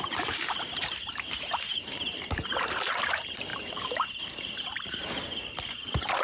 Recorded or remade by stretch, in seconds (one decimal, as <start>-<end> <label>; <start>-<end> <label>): 0.0-6.2 remade